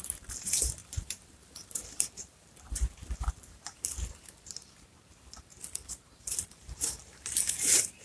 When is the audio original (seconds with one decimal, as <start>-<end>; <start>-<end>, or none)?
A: none